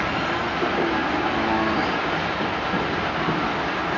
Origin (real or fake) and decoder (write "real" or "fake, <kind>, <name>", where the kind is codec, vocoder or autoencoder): real